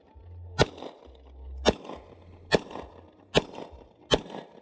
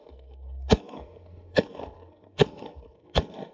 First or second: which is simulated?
second